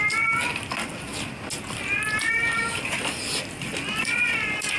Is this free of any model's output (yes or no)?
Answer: yes